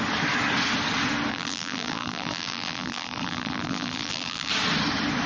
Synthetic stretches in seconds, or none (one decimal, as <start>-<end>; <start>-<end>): 1.3-4.5